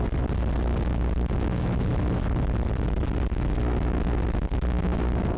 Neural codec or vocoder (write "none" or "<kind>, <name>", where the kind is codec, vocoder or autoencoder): none